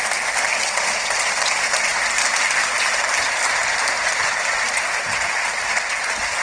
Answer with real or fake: real